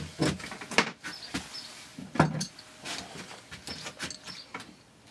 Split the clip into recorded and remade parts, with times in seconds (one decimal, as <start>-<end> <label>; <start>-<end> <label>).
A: 0.0-5.1 recorded